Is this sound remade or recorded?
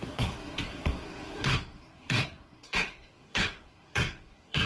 remade